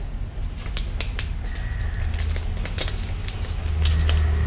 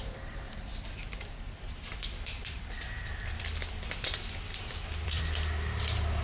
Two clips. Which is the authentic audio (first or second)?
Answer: first